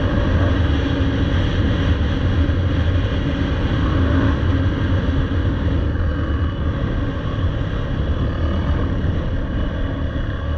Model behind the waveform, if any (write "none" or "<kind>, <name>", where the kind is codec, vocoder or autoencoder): none